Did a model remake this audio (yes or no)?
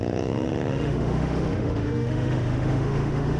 yes